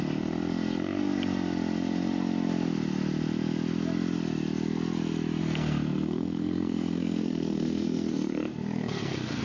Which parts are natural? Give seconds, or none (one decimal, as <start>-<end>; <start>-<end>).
0.0-5.4